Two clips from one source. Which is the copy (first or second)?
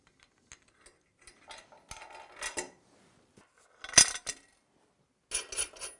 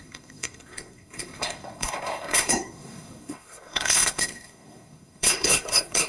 second